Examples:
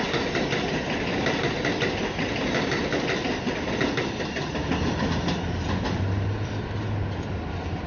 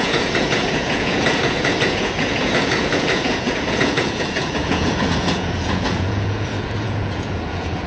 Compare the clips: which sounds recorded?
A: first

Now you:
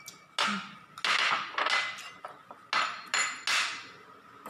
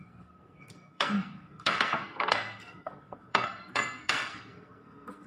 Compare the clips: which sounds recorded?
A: first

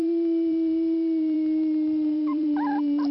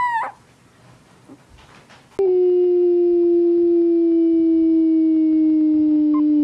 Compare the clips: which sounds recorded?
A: second